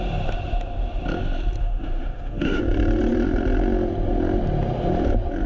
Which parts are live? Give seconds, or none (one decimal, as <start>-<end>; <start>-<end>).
0.0-1.6; 2.6-5.5